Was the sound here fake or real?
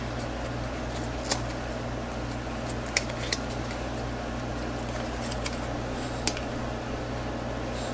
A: real